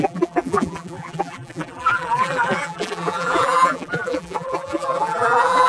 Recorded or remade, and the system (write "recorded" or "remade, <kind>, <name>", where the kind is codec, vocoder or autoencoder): remade, vocoder, BigVGAN v2